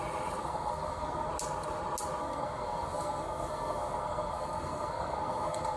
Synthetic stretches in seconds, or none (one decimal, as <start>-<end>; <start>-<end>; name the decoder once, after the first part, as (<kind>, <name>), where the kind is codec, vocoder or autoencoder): 0.4-1.3 (codec, SNAC); 2.2-5.8